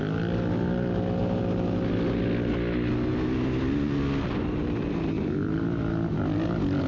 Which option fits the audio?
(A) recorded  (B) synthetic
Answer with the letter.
A